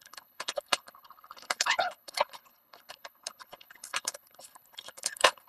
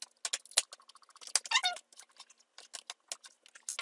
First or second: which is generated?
first